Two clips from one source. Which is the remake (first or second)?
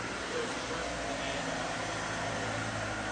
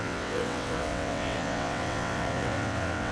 second